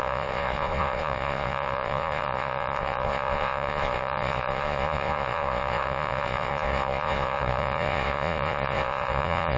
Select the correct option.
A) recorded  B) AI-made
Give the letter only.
B